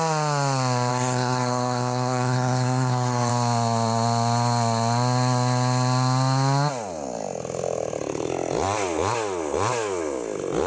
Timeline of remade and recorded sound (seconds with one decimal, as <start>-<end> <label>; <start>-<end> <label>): 0.0-0.9 recorded; 0.9-3.3 remade; 3.3-10.7 recorded